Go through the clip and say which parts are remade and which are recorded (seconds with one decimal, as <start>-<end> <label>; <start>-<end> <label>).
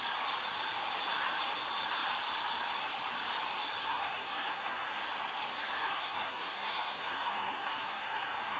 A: 0.0-3.8 recorded; 3.8-5.0 remade; 5.0-5.5 recorded; 5.5-8.6 remade